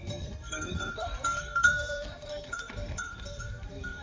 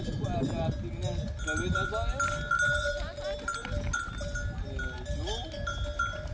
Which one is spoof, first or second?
first